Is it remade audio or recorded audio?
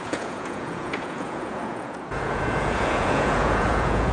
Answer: remade